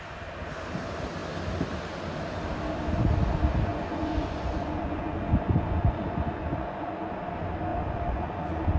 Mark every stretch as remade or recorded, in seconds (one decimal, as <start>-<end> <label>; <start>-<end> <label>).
0.0-3.7 recorded; 3.7-7.1 remade; 7.1-7.7 recorded; 7.7-8.8 remade